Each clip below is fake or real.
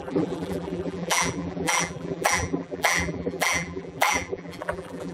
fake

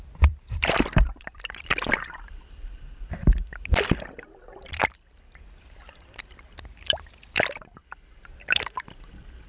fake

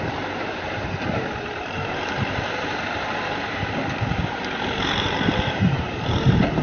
fake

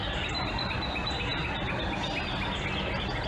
real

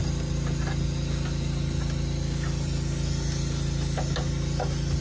real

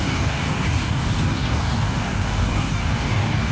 fake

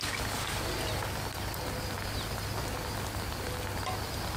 real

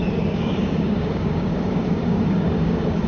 fake